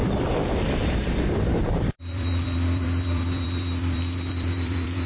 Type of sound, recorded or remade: remade